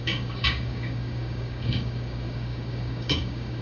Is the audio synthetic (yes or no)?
yes